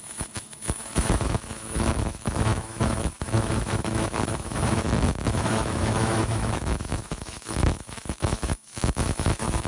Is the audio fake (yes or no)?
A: yes